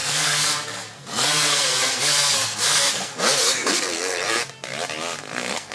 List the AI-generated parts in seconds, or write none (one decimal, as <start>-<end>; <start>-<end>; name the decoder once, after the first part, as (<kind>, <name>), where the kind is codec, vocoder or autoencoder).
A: 0.0-4.4 (codec, SNAC); 5.2-5.7